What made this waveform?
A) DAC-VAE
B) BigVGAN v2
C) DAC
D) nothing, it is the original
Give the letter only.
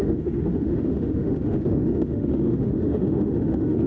A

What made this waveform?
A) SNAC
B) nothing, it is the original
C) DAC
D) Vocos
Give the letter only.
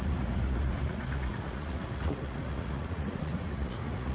D